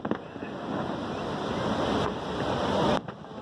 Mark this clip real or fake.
real